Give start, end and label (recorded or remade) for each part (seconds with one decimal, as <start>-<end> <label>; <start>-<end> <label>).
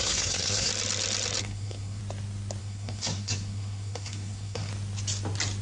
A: 0.0-0.7 remade; 0.7-1.4 recorded; 1.4-2.0 remade; 2.0-2.6 recorded; 2.6-4.7 remade; 4.7-5.6 recorded